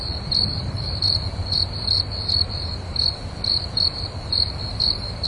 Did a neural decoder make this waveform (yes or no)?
yes